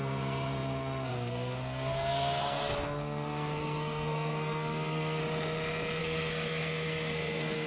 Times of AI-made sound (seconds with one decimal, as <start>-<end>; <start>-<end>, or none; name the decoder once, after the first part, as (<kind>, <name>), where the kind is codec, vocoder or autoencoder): 0.0-5.2 (codec, SNAC); 6.0-7.7